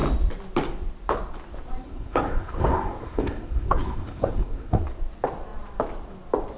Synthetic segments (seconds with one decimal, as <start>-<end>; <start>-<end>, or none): 1.9-4.8